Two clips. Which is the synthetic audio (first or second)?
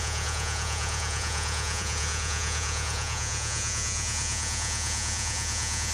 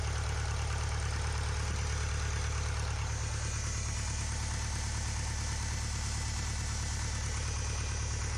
first